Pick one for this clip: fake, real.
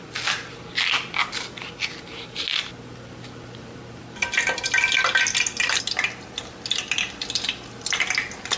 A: real